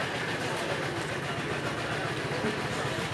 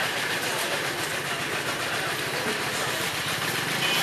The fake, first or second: second